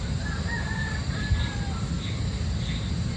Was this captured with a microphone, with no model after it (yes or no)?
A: yes